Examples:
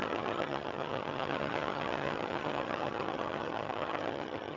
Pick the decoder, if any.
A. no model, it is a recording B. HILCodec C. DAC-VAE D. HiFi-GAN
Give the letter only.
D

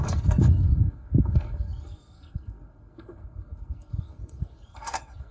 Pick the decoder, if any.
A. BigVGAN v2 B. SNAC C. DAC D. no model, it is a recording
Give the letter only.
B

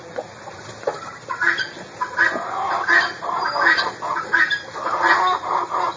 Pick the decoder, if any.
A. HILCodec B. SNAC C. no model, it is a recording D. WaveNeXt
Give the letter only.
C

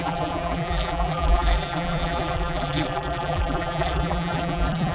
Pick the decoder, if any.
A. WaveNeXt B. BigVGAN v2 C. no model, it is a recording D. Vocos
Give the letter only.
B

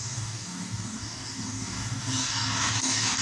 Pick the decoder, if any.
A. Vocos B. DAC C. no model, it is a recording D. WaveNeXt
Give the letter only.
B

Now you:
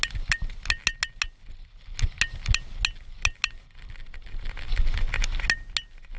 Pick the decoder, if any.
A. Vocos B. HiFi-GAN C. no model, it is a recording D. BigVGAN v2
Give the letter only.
C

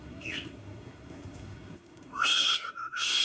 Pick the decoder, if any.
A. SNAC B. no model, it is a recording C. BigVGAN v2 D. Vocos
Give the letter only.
A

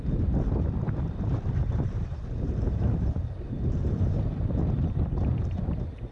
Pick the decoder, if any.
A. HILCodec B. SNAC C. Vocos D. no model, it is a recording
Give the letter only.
D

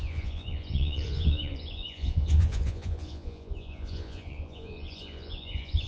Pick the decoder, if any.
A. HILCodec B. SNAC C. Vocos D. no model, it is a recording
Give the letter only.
C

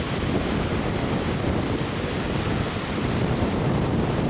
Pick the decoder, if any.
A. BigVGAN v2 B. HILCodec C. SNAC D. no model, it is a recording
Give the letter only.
D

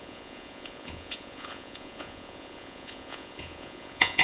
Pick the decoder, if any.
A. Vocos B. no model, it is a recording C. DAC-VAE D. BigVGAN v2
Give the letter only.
A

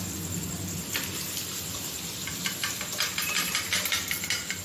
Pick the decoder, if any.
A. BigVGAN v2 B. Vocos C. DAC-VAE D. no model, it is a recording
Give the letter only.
A